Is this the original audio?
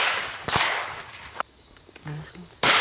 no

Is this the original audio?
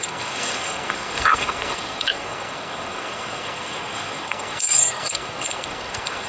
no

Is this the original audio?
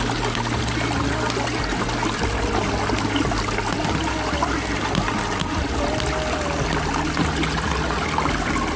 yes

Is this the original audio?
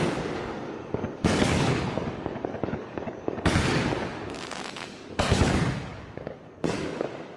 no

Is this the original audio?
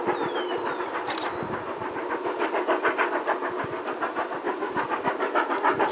yes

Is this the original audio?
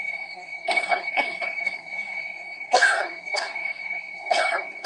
no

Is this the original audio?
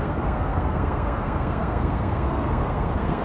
no